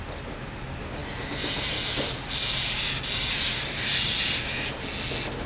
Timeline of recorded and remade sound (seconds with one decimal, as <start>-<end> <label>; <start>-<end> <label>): 0.0-5.5 recorded